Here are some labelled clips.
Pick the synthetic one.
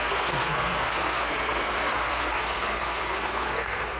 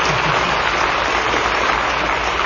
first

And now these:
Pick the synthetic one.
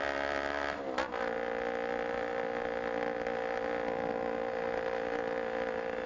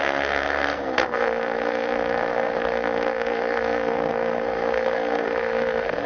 second